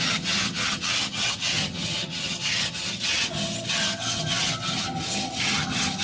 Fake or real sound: fake